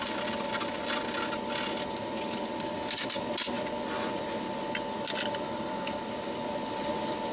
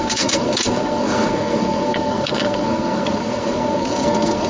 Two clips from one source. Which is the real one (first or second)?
first